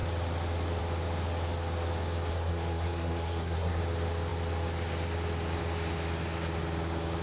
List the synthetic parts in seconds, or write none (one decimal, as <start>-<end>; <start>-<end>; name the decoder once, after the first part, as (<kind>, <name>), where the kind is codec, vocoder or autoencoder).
2.3-3.8 (codec, SNAC)